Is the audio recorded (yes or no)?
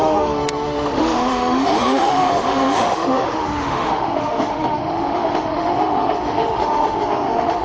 no